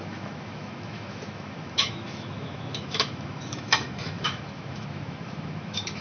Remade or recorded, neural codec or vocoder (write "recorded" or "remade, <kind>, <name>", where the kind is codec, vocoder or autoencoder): remade, autoencoder, DAC-VAE